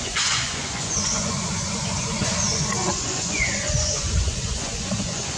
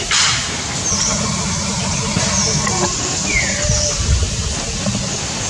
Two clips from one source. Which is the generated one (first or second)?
first